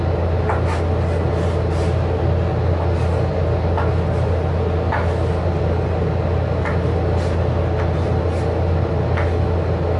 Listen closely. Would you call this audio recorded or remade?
recorded